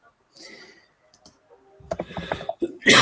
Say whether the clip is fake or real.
real